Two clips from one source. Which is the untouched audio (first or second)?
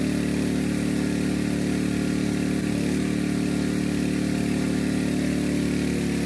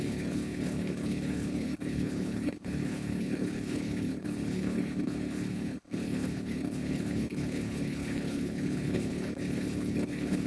first